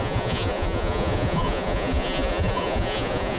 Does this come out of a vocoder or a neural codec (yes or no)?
yes